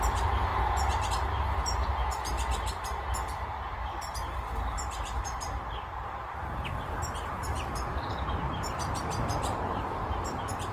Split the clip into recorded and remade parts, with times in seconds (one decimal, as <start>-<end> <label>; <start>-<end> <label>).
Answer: 0.0-0.5 remade; 0.5-1.1 recorded; 1.1-10.7 remade